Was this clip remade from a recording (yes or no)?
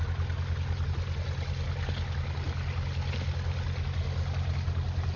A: no